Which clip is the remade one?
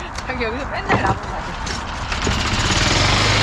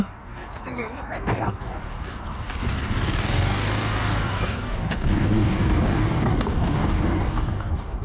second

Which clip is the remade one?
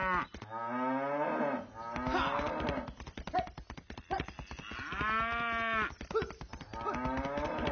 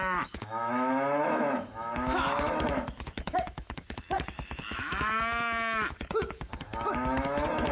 second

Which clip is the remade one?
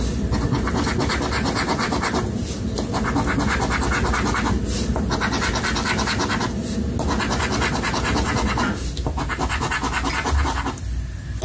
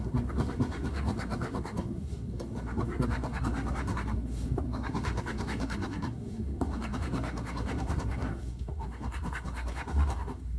second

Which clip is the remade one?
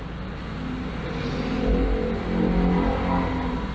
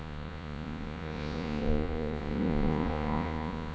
second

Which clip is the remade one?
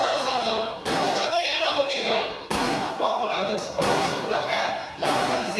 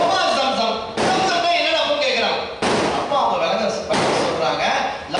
first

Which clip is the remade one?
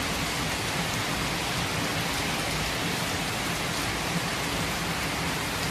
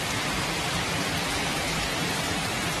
second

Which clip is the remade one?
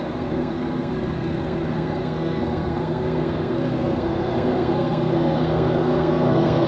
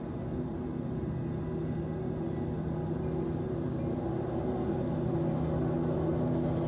first